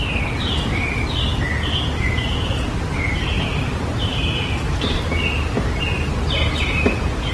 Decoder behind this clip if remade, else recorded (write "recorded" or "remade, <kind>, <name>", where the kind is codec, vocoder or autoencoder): recorded